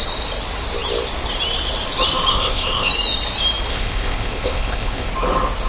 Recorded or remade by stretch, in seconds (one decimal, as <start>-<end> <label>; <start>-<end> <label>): 0.0-2.3 recorded; 2.3-2.9 remade; 2.9-3.7 recorded; 3.7-5.1 remade; 5.1-5.7 recorded